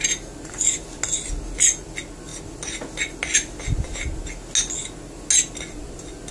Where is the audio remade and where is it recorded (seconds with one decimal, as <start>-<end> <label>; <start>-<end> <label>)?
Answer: 0.0-6.3 recorded